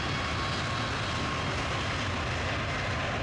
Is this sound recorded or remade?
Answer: recorded